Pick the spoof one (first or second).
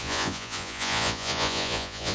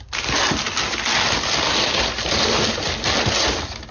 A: first